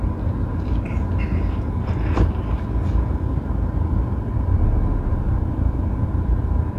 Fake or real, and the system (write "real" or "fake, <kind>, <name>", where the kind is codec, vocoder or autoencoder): real